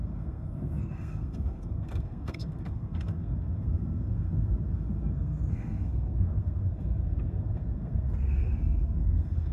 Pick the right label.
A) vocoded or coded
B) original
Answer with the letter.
A